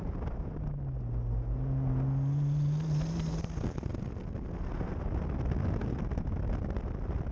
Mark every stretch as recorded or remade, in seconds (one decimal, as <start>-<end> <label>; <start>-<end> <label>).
0.0-7.3 recorded